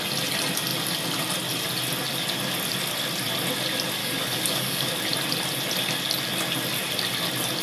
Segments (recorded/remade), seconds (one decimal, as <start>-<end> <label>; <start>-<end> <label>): 0.0-4.0 recorded; 4.0-4.9 remade; 4.9-7.6 recorded

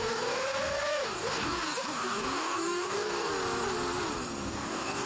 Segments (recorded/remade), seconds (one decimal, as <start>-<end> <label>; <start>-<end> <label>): 0.0-3.3 remade; 3.3-4.5 recorded; 4.5-5.1 remade